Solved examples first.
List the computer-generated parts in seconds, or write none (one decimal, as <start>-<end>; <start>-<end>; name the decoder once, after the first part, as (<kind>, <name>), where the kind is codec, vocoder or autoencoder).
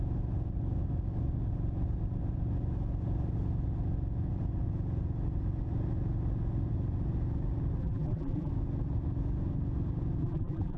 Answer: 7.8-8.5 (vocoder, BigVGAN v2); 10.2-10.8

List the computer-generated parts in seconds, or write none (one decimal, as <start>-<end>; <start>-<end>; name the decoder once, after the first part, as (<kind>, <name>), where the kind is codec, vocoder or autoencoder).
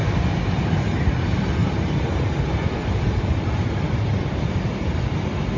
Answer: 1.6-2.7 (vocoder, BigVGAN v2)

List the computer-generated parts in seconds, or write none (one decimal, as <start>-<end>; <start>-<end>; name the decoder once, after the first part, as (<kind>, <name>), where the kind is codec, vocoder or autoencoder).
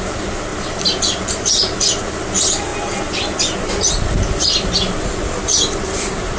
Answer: 0.5-1.0 (vocoder, BigVGAN v2)